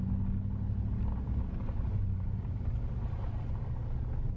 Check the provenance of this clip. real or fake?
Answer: real